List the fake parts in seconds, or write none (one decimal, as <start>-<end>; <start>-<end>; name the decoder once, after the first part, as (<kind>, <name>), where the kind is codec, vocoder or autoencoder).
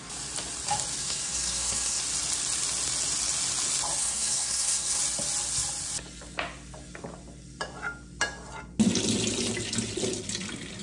1.0-2.0 (codec, SNAC); 4.0-5.0